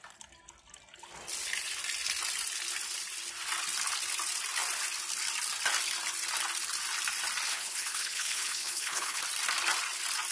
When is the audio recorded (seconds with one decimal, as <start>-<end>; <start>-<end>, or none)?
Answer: 0.0-7.5; 9.2-10.3